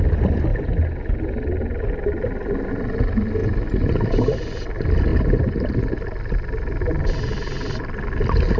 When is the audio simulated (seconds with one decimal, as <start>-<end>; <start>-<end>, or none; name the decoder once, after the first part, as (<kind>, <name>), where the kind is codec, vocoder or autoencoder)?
none